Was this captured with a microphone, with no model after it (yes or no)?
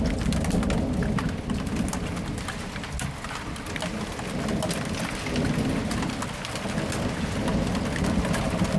yes